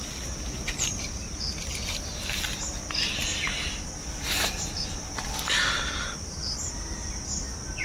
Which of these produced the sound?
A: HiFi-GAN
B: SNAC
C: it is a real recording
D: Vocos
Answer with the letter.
C